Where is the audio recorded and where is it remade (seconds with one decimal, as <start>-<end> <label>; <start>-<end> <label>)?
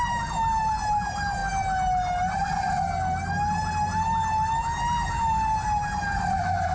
0.0-1.4 remade; 1.4-5.1 recorded; 5.1-6.7 remade